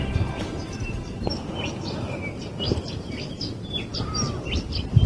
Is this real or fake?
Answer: real